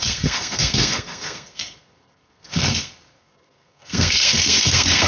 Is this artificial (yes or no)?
yes